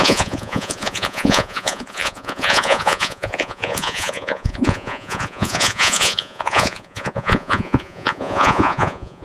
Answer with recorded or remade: remade